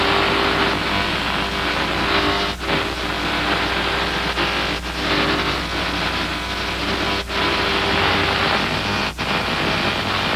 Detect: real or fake real